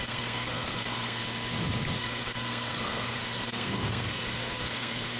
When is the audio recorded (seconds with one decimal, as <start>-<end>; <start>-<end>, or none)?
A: 1.2-2.0